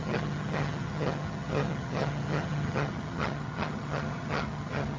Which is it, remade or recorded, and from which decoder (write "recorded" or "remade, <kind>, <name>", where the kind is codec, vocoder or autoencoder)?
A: remade, vocoder, HiFi-GAN